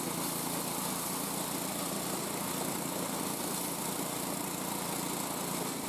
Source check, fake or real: real